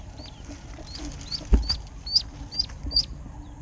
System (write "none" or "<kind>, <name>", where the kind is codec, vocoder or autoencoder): none